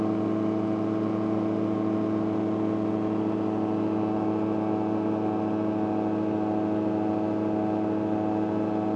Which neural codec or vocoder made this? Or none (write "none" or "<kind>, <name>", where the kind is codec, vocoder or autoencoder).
none